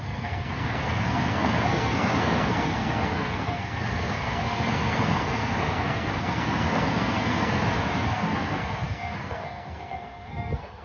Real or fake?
fake